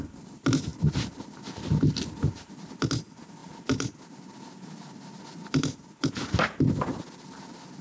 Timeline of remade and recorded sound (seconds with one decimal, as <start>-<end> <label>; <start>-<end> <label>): 0.0-7.8 recorded